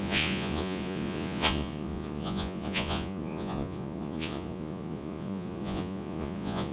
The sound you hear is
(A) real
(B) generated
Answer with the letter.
B